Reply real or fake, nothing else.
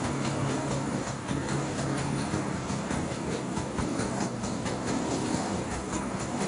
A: fake